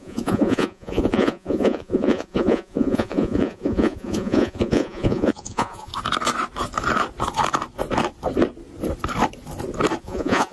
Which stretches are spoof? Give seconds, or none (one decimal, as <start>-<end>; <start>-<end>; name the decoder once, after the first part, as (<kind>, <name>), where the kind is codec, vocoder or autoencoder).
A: 0.0-5.9 (vocoder, Vocos); 10.0-10.5